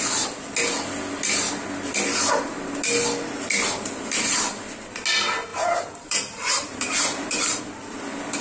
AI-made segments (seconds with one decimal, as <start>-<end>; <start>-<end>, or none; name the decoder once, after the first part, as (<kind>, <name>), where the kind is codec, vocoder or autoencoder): 5.5-7.6 (vocoder, BigVGAN v2)